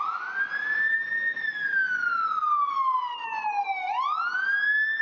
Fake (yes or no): no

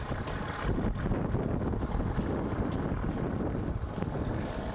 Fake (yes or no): no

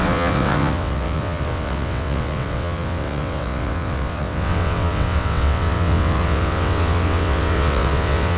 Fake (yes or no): yes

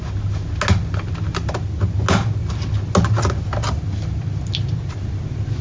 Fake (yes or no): no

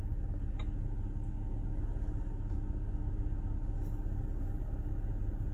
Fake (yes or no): no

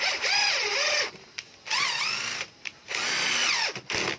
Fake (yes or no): no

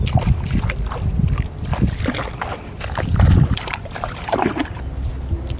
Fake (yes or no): no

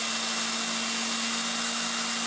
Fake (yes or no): no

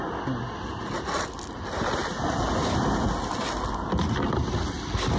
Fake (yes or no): no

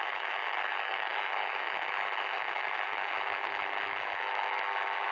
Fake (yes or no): yes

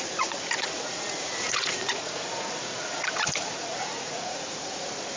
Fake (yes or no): yes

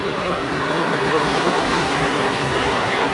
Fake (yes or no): yes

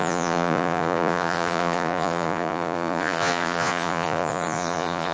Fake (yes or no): yes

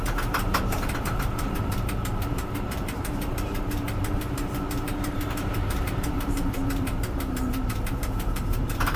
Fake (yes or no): yes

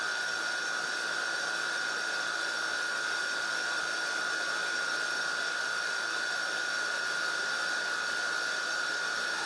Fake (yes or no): yes